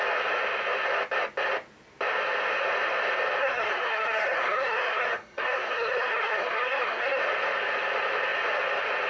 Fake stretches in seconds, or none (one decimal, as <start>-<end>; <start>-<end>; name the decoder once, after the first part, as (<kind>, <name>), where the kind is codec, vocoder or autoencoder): 3.4-7.2 (codec, SNAC)

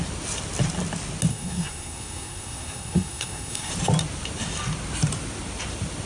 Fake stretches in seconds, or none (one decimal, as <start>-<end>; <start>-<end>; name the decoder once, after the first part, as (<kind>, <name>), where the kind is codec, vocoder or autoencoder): 1.3-3.7 (codec, SNAC)